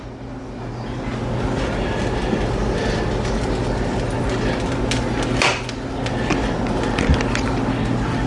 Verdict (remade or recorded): recorded